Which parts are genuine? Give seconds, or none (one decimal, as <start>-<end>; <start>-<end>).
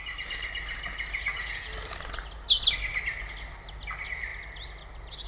0.0-2.9; 3.6-4.3